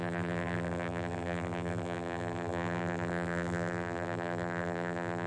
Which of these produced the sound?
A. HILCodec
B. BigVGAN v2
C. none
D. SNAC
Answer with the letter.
B